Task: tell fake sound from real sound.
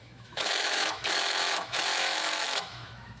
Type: fake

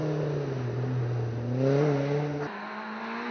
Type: real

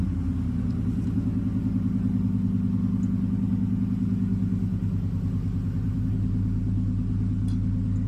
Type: real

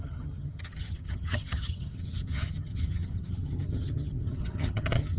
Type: fake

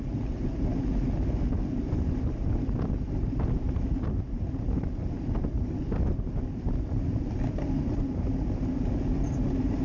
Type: real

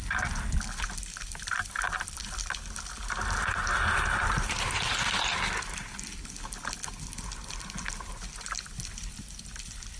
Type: real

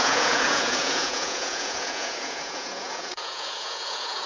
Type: fake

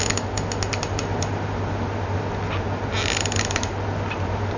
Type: real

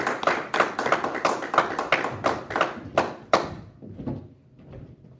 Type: real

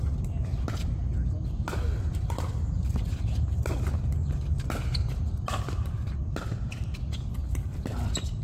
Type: real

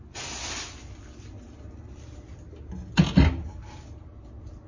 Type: real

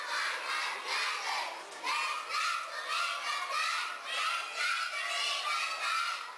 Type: real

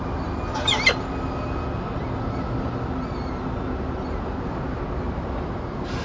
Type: real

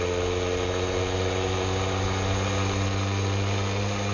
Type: real